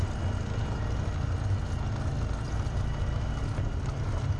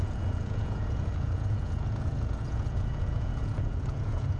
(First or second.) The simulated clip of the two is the second